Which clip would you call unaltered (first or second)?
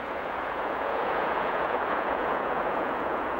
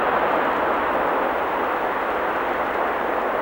second